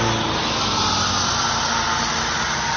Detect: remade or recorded recorded